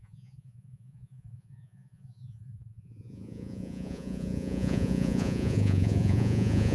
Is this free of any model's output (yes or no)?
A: no